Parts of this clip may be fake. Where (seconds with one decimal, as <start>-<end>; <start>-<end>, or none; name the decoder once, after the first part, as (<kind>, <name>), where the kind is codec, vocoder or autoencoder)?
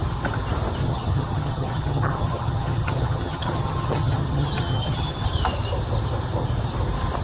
0.8-5.1 (vocoder, HiFi-GAN)